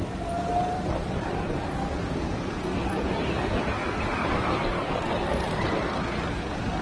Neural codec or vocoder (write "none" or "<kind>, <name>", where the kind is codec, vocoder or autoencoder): none